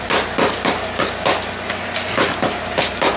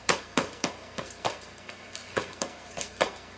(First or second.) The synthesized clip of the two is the second